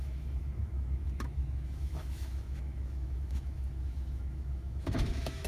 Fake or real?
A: fake